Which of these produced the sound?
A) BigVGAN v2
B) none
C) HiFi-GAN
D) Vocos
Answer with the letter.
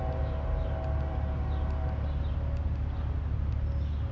B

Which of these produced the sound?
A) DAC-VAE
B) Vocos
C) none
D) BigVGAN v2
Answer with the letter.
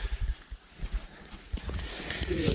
B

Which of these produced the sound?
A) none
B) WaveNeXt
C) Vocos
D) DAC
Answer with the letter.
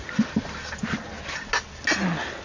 A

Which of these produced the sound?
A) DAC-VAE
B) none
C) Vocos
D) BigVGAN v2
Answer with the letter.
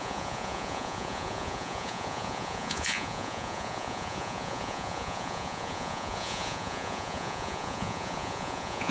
C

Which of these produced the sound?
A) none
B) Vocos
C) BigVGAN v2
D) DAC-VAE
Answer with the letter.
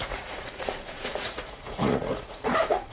B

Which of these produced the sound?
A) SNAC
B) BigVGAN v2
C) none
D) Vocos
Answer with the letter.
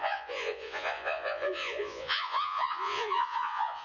D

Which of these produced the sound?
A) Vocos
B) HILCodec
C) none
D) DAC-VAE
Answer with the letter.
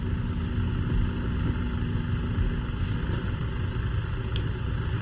C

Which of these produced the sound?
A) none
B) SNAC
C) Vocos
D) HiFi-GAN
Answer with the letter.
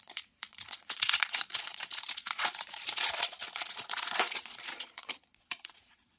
C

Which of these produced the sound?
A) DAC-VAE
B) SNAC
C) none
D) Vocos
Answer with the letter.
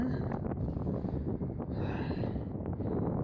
C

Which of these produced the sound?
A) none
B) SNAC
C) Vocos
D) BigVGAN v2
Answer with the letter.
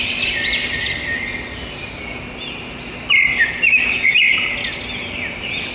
A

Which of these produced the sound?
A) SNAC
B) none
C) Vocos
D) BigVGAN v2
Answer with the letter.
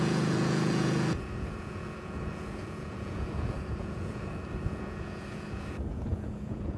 C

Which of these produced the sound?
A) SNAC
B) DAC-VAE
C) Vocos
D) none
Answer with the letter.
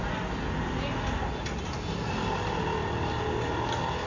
D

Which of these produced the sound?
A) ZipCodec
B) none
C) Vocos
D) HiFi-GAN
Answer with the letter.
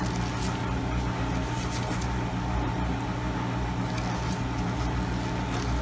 B